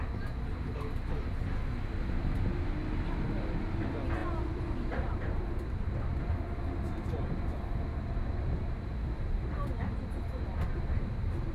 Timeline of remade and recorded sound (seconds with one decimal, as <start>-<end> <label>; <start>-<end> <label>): 0.0-4.2 recorded; 4.2-5.5 remade; 5.5-10.7 recorded; 10.7-11.5 remade